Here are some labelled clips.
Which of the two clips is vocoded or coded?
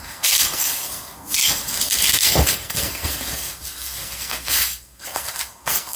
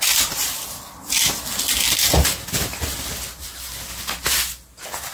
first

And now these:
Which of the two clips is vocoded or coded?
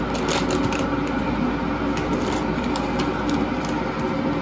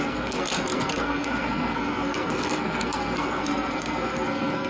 second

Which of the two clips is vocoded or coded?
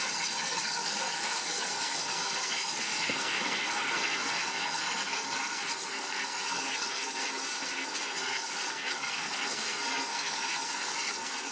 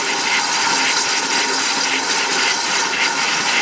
first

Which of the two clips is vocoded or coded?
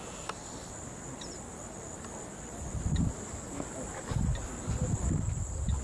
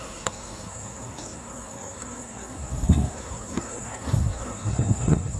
second